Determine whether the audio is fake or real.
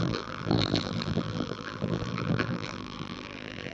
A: fake